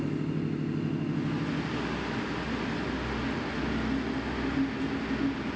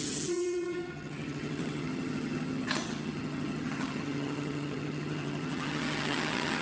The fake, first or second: second